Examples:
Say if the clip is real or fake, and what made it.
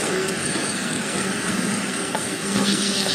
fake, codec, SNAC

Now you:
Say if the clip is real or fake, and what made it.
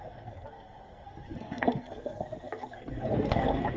fake, codec, SNAC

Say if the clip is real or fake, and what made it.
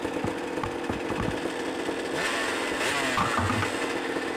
real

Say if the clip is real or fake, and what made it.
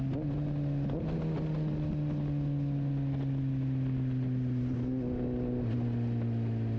real